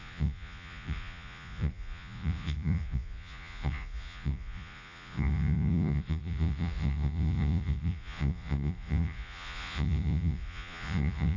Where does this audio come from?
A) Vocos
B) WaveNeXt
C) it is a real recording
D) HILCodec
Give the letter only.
A